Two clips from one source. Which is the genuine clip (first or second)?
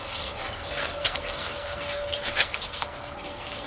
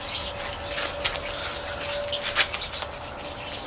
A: second